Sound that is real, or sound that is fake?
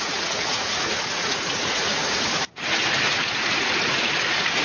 fake